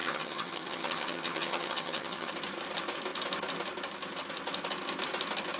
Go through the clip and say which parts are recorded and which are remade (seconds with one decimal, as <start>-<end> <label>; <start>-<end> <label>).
0.0-2.3 remade; 2.3-5.6 recorded